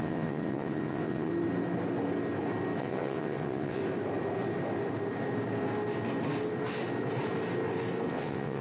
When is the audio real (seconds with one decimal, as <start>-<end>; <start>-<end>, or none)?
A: 1.3-2.8; 3.8-8.1